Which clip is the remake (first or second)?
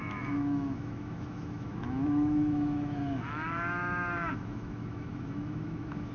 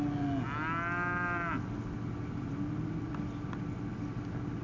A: first